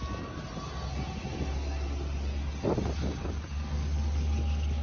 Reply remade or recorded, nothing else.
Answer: recorded